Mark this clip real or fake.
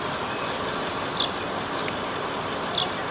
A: real